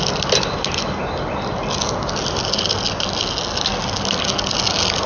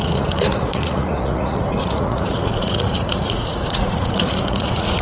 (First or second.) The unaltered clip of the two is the first